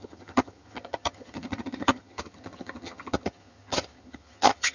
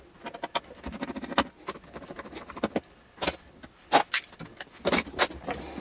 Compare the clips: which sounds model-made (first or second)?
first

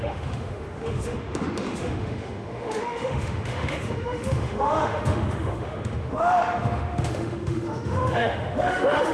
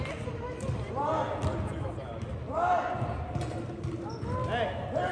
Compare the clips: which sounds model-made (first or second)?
first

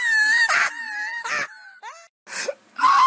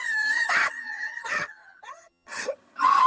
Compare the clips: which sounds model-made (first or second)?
second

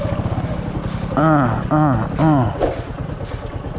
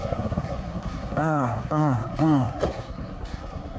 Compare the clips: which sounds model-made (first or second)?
second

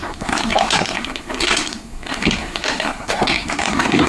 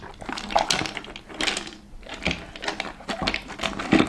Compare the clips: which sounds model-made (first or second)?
first